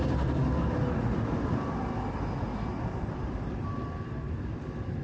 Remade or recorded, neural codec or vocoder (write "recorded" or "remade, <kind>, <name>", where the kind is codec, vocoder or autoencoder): recorded